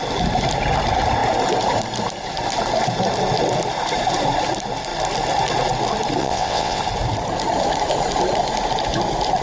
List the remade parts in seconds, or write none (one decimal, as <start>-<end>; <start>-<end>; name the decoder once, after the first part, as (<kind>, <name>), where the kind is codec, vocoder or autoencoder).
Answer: 6.2-6.8 (vocoder, WaveNeXt)